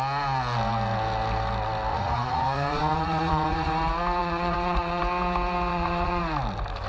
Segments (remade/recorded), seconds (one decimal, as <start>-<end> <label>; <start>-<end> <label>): 0.0-1.9 recorded; 1.9-3.7 remade; 3.7-4.2 recorded; 4.2-5.0 remade; 5.0-5.7 recorded; 5.7-6.2 remade; 6.2-6.9 recorded